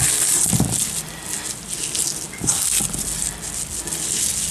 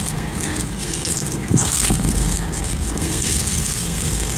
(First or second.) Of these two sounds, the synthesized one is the second